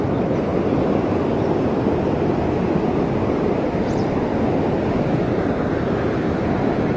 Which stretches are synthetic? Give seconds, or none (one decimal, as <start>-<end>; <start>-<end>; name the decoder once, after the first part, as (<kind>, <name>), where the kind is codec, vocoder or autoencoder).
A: none